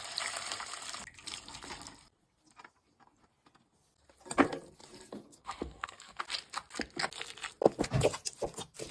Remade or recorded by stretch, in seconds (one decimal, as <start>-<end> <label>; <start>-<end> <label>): 0.0-5.4 recorded; 5.4-6.2 remade; 6.2-8.9 recorded